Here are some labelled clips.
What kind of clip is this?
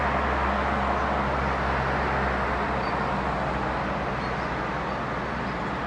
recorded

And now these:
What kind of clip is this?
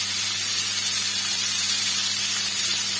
recorded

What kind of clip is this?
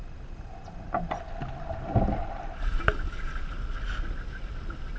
recorded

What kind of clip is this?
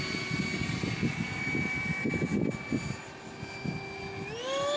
recorded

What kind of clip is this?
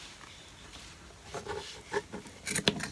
recorded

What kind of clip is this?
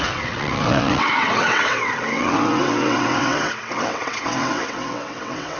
remade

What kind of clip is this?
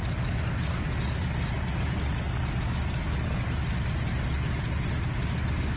recorded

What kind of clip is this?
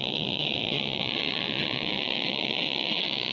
remade